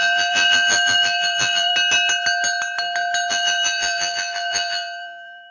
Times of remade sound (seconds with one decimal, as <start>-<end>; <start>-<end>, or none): 0.0-1.7; 3.3-5.5